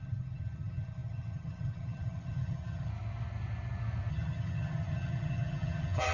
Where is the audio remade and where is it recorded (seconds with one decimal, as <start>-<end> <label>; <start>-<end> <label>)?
0.0-2.9 remade; 2.9-4.1 recorded; 4.1-6.1 remade